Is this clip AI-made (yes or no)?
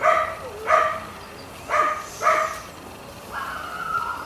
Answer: no